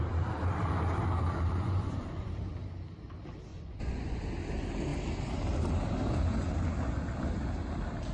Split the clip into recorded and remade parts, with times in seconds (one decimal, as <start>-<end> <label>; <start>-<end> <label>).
0.0-1.5 recorded; 1.5-2.5 remade; 2.5-3.5 recorded; 3.5-4.2 remade; 4.2-8.1 recorded